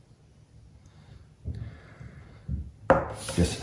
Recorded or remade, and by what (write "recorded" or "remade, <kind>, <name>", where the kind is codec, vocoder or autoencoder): recorded